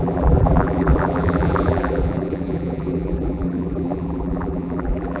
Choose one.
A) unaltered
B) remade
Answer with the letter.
B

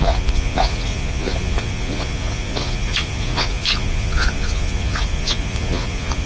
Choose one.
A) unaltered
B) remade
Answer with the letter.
B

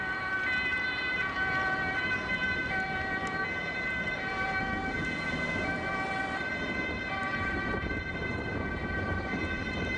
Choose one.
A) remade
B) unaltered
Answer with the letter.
B